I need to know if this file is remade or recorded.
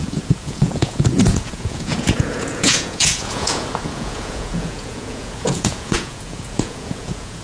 remade